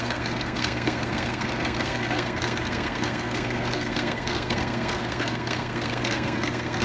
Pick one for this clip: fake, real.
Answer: fake